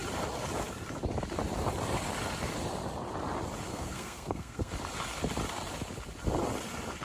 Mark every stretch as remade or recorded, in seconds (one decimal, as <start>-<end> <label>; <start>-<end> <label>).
0.0-3.7 recorded; 3.7-4.7 remade; 4.7-7.0 recorded

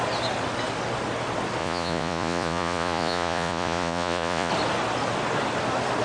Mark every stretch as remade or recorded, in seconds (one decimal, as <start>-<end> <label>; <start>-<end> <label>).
0.0-1.6 recorded; 1.6-4.5 remade; 4.5-6.0 recorded

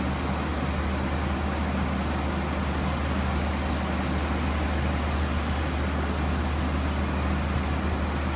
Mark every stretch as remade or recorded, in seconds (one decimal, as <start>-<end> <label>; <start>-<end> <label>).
0.0-8.4 recorded

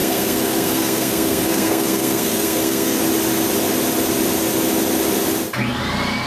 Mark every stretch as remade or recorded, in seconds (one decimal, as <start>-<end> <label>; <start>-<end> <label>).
0.0-3.0 remade; 3.0-6.3 recorded